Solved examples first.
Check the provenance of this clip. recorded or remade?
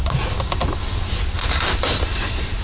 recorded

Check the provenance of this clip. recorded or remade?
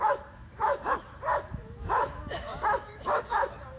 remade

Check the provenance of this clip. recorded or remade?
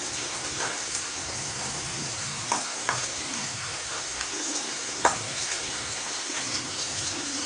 remade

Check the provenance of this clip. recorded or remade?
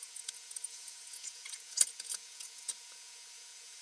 remade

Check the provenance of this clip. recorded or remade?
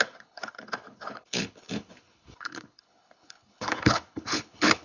remade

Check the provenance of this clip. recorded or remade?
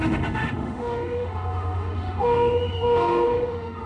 remade